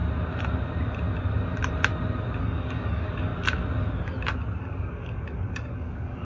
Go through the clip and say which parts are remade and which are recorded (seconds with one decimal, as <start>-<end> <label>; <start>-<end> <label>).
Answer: 0.0-2.4 recorded; 2.4-3.3 remade; 3.3-4.6 recorded; 4.6-6.2 remade